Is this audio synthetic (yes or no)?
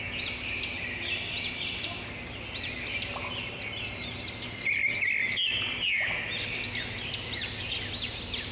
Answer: no